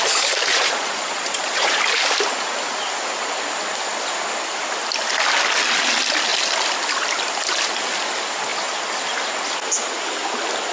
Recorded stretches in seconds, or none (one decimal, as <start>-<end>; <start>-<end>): 0.0-0.5; 1.8-10.7